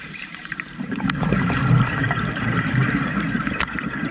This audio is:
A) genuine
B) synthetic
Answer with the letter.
B